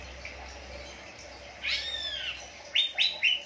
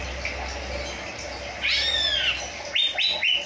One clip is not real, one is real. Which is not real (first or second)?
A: first